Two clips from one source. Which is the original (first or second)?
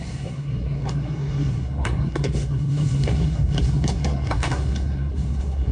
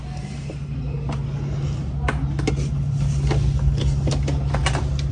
second